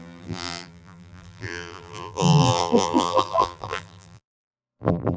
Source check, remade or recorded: remade